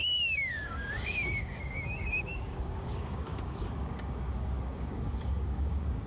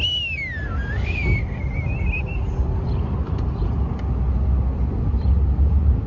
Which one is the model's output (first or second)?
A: first